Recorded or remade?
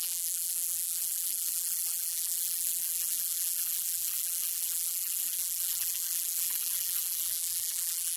remade